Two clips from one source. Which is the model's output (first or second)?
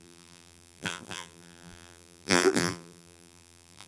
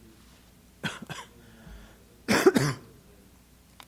first